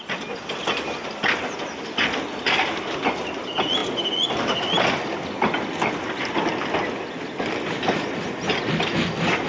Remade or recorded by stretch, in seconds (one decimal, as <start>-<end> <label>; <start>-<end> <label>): 0.0-9.5 recorded